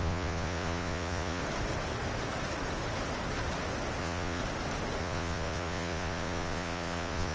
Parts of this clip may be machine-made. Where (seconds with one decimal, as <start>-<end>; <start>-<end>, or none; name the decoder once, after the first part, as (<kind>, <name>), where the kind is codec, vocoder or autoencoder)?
0.0-1.4 (vocoder, Vocos); 4.0-4.4; 5.0-7.3